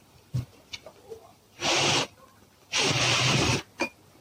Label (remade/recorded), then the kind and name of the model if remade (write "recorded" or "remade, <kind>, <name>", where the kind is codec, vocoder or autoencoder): remade, vocoder, BigVGAN v2